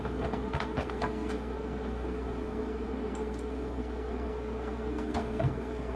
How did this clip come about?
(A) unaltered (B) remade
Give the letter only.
B